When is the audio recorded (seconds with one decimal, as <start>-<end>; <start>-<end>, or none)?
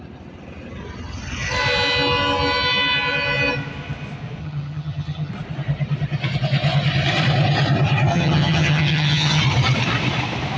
0.0-4.4; 5.3-8.1; 9.4-10.6